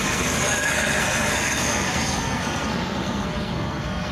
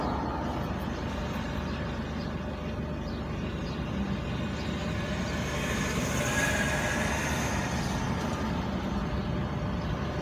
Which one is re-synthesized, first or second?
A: first